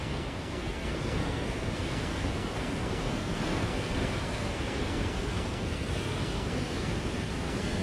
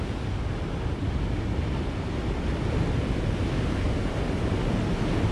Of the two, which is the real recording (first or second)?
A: second